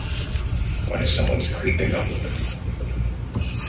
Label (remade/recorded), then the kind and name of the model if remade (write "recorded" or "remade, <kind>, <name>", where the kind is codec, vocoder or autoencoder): recorded